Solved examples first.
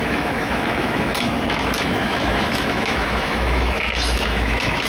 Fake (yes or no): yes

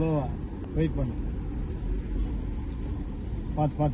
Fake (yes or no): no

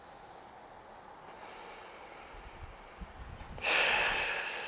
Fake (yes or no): no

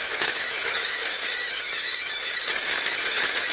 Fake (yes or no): yes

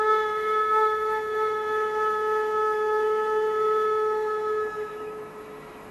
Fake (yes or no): yes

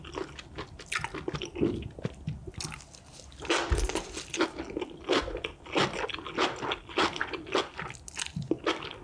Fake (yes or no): no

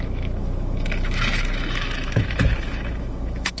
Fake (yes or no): yes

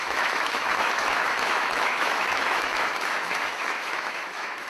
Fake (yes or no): yes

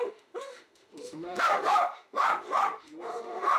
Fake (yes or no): yes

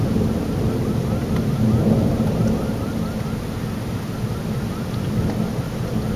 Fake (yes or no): no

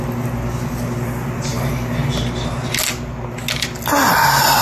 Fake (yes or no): no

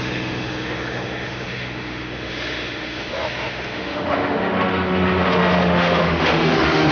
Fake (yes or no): yes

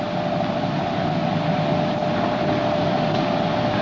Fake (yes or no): no